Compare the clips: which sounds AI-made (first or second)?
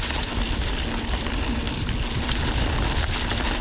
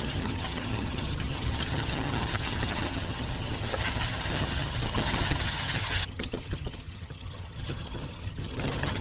second